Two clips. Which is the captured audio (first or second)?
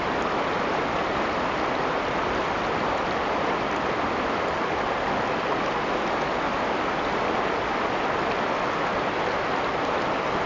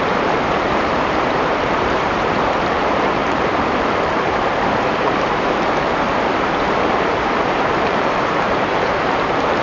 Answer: first